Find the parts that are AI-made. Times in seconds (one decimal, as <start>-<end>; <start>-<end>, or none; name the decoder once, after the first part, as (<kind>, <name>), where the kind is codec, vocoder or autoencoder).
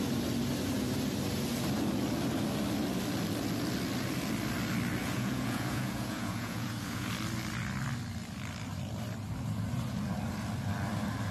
5.0-7.1 (vocoder, Vocos)